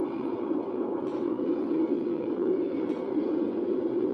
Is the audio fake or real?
fake